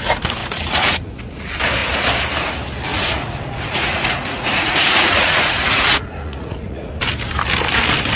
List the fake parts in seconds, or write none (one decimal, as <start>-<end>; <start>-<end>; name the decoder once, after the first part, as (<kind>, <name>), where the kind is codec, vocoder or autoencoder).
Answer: 0.4-1.4 (vocoder, Vocos); 2.9-6.9